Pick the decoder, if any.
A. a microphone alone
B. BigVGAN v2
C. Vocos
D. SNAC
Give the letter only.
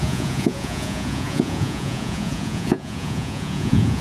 C